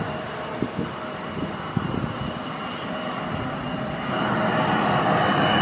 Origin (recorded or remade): recorded